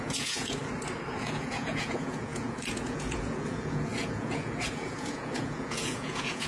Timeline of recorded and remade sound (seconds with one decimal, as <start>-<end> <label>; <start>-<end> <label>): 0.0-0.6 remade; 0.6-1.1 recorded; 1.1-6.5 remade